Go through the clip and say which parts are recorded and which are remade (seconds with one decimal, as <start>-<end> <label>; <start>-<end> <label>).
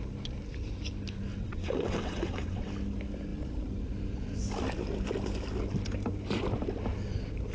0.0-1.3 recorded; 1.3-2.7 remade; 2.7-7.5 recorded